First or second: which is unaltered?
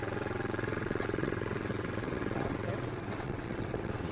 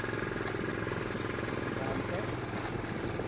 second